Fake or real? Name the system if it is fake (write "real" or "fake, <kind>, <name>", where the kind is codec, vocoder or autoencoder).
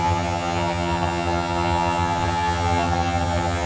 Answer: fake, vocoder, HiFi-GAN